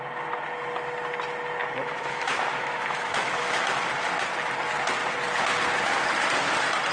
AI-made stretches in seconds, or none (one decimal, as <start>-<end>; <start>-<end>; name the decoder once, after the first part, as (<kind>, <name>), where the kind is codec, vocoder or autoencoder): 1.6-3.8 (autoencoder, DAC-VAE)